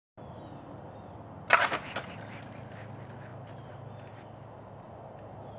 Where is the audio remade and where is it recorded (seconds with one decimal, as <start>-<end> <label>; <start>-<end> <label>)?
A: 0.0-5.6 recorded